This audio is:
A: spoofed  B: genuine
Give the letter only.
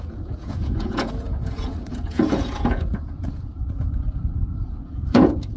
A